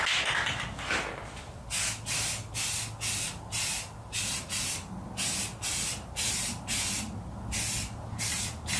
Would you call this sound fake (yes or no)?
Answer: no